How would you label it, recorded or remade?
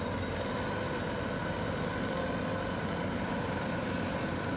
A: recorded